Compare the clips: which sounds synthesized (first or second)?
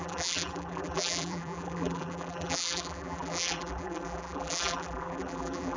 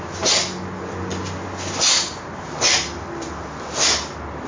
first